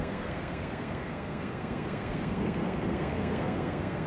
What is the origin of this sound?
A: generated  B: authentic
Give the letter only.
A